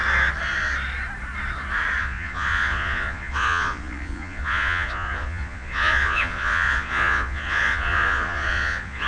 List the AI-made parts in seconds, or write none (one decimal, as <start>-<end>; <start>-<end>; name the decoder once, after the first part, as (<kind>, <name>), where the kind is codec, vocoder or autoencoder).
2.0-9.1 (vocoder, Vocos)